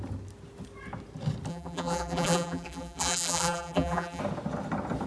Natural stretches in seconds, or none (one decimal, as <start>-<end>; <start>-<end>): 0.0-1.5; 4.2-5.1